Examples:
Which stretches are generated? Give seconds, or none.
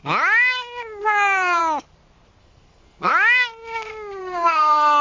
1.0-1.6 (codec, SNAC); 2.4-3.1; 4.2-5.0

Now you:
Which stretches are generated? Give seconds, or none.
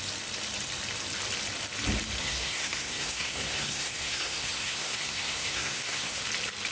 2.2-6.2 (codec, SNAC)